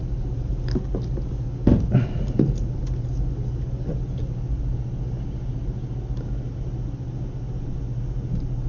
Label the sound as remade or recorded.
recorded